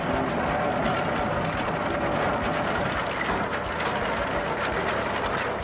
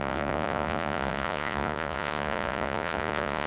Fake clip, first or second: second